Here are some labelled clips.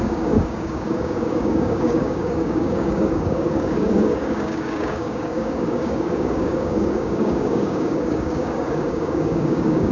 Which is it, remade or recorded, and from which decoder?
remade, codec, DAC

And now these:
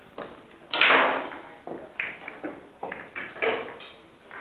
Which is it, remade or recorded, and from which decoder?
recorded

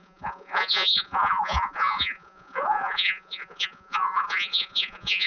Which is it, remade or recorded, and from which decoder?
remade, vocoder, Vocos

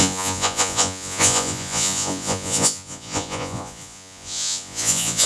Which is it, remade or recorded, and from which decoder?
remade, vocoder, Vocos